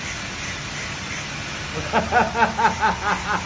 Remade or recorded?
recorded